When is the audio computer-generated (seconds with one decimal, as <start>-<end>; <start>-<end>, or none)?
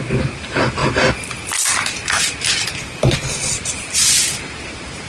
none